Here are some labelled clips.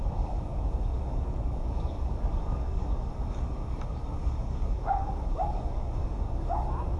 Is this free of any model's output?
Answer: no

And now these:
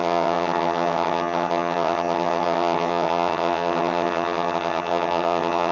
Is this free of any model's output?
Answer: no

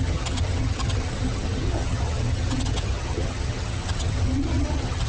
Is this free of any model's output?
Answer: no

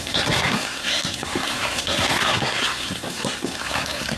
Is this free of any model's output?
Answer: no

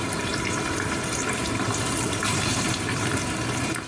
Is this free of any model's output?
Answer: no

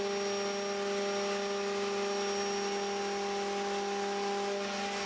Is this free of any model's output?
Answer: yes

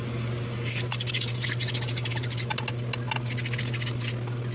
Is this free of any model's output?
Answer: yes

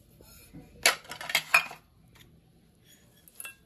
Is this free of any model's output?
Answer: yes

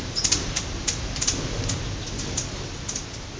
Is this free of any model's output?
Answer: yes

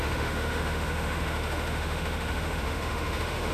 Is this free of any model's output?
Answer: no